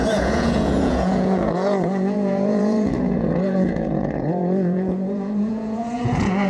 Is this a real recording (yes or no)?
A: no